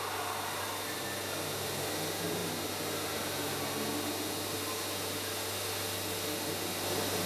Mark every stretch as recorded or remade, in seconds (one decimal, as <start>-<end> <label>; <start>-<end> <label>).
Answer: 0.0-7.3 recorded